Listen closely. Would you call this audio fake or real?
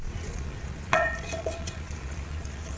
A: fake